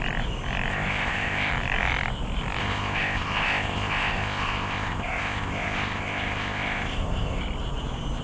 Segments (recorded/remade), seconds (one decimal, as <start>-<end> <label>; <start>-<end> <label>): 0.0-0.7 recorded; 0.7-1.5 remade; 1.5-2.6 recorded; 2.6-7.4 remade; 7.4-8.2 recorded